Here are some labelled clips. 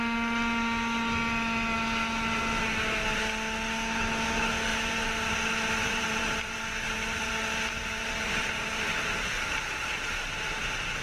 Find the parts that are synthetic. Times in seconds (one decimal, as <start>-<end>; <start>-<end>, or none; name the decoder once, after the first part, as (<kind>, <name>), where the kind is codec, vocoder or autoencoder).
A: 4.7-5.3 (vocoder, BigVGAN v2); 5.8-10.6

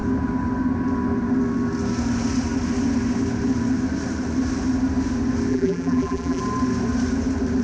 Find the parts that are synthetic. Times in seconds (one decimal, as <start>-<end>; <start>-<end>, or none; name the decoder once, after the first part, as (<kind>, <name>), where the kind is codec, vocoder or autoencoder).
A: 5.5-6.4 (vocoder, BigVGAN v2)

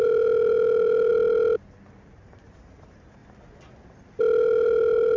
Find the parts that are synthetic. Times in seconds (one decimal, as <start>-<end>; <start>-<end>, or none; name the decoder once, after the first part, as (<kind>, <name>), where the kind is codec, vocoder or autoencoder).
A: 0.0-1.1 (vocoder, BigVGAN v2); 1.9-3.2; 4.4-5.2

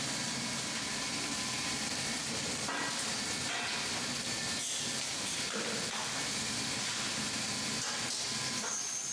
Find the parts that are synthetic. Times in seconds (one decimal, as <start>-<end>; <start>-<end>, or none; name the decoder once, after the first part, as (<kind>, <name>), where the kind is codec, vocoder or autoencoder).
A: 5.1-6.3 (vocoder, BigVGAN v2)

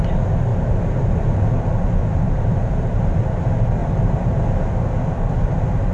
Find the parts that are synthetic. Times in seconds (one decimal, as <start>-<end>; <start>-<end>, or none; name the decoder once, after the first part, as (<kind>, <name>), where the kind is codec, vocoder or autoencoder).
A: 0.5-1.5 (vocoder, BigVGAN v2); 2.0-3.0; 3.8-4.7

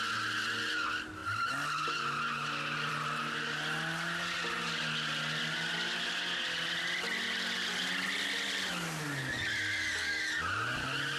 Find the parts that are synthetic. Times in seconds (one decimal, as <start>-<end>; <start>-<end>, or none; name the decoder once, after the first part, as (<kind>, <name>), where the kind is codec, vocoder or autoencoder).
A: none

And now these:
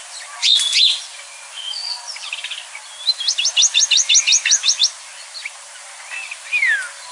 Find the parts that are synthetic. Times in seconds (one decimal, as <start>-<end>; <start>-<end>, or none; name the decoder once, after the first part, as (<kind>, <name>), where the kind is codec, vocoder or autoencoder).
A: none